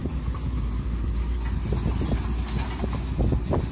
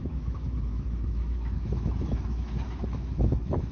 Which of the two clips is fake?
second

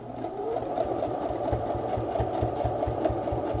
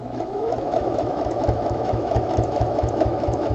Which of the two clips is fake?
second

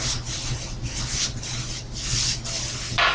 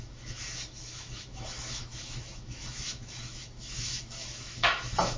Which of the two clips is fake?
second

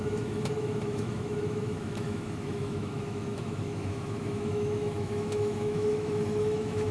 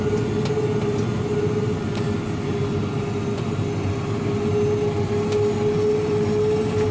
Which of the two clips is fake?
first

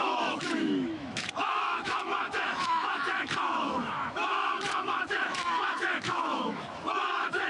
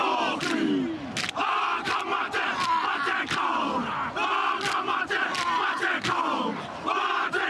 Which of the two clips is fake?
first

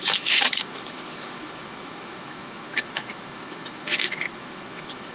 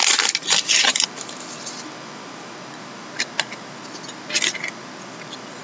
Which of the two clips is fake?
first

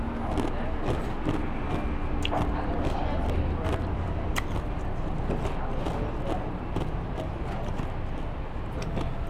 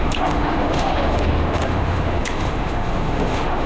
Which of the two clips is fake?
second